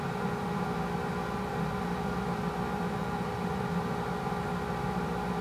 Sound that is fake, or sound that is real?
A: real